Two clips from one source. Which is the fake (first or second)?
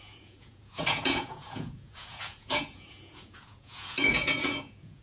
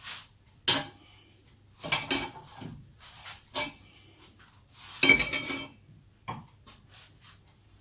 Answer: first